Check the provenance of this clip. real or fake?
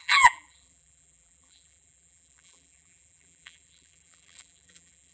fake